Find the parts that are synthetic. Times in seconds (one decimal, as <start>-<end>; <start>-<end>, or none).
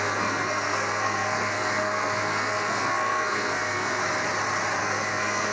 0.0-4.0; 4.8-5.5